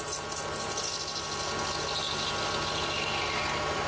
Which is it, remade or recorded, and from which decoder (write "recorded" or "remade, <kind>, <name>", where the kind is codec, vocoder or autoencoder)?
recorded